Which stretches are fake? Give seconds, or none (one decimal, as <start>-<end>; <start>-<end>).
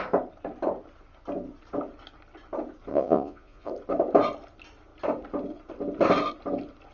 2.9-3.7